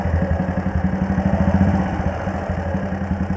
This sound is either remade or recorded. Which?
recorded